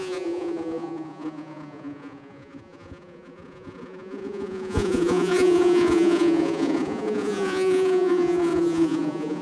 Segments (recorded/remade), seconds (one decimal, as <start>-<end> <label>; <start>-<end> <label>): 0.0-9.4 remade